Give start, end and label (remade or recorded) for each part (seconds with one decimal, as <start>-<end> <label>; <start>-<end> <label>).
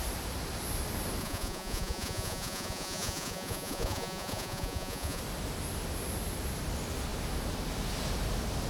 0.0-1.2 recorded; 1.2-5.2 remade; 5.2-8.7 recorded